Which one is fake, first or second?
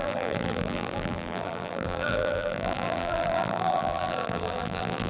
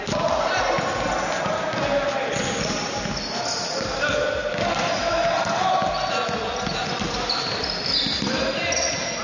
first